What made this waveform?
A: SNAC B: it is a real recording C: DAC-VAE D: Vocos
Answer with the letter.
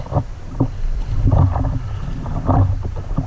B